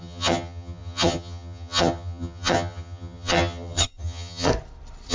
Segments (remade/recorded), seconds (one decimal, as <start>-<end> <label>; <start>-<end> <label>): 0.0-4.5 remade; 4.5-5.1 recorded